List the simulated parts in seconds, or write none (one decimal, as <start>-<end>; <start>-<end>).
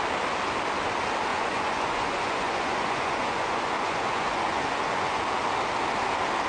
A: 1.3-5.2